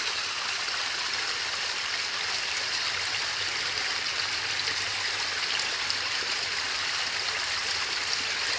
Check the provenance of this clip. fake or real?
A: fake